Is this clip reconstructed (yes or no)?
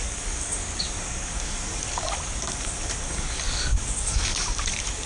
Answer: yes